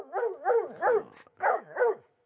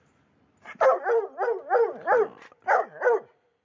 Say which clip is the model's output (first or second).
first